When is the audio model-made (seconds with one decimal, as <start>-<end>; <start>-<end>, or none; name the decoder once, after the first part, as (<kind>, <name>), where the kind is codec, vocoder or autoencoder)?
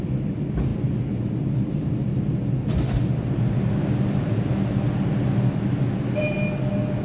none